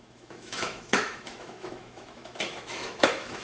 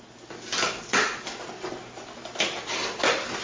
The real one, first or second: second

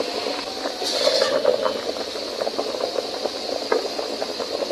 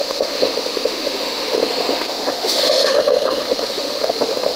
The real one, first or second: first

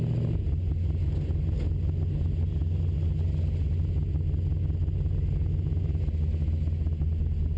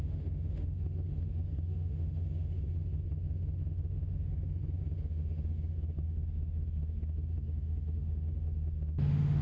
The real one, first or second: first